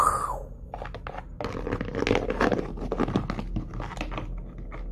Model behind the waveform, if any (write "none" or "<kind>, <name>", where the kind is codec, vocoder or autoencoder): none